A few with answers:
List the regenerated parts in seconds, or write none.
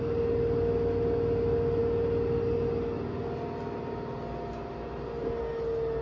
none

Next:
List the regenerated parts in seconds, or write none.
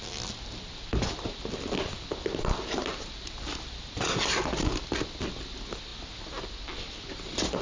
2.9-5.2 (vocoder, BigVGAN v2)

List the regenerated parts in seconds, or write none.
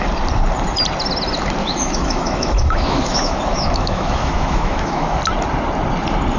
1.6-5.2 (autoencoder, DAC-VAE)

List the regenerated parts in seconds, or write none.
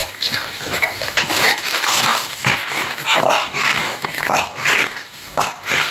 0.0-5.9 (codec, DAC)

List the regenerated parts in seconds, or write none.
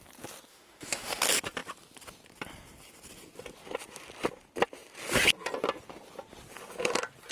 0.5-1.2 (autoencoder, DAC-VAE)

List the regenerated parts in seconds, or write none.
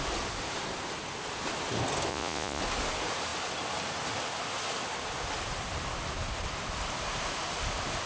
2.1-2.6 (vocoder, Vocos)